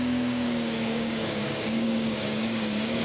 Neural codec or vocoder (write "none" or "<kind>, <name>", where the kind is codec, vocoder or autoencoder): codec, DAC